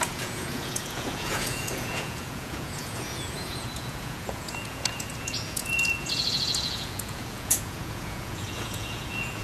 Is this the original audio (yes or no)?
no